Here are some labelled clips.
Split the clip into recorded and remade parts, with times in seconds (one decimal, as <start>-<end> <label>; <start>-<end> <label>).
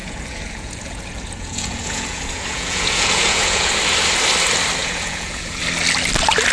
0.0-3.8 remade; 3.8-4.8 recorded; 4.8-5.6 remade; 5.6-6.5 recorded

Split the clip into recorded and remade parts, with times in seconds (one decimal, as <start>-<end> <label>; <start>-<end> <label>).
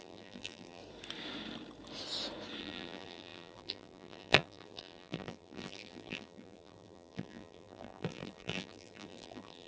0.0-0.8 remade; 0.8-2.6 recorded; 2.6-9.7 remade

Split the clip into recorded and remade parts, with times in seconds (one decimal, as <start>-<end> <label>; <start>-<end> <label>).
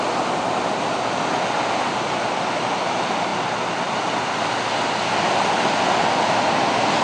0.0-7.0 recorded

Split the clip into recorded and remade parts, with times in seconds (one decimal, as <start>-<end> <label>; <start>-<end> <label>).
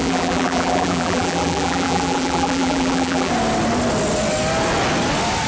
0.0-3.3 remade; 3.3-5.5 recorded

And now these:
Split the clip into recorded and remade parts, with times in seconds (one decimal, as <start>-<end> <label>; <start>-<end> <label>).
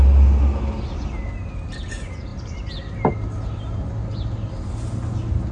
0.0-5.5 recorded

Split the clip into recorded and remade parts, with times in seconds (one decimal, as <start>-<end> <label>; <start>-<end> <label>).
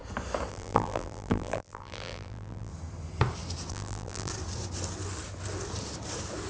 0.0-0.5 recorded; 0.5-2.7 remade; 2.7-3.7 recorded; 3.7-4.3 remade; 4.3-6.5 recorded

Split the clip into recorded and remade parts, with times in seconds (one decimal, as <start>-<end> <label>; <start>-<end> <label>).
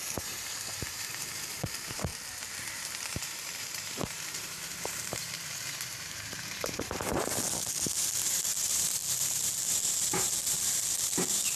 0.0-2.1 remade; 2.1-2.6 recorded; 2.6-11.6 remade